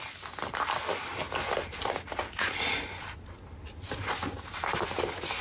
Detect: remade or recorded recorded